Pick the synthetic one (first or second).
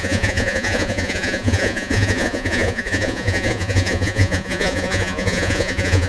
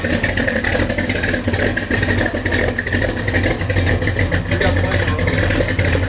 first